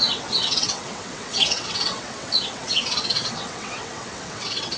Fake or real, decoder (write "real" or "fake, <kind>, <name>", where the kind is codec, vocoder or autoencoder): fake, vocoder, WaveNeXt